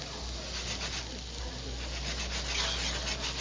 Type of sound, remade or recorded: recorded